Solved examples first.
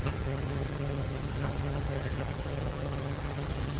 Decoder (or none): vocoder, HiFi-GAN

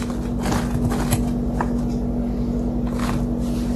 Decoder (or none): none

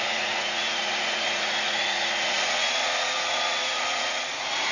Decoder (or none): vocoder, Vocos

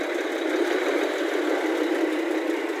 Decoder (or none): none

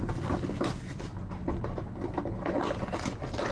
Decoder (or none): none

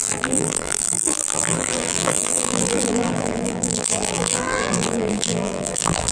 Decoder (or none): vocoder, BigVGAN v2